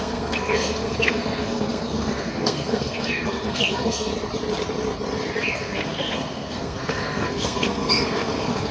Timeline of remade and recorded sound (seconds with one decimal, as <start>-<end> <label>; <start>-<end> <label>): 0.0-4.1 remade; 4.1-5.5 recorded; 5.5-8.7 remade